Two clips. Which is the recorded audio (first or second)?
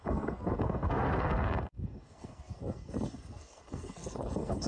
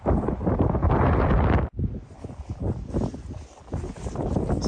second